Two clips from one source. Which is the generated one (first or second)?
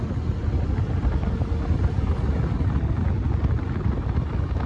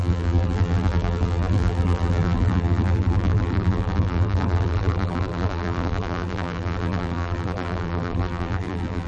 second